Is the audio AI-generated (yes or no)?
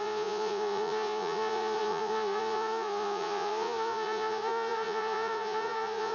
yes